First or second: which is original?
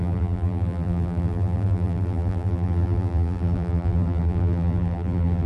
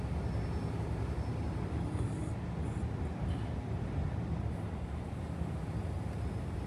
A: second